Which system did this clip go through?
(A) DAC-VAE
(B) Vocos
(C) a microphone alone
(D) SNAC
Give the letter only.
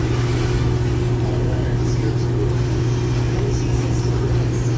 C